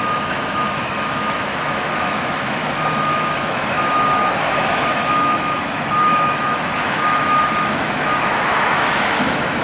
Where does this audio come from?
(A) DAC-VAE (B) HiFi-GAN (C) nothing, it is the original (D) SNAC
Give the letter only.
A